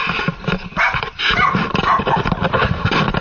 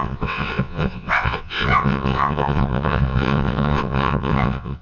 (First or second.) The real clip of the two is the first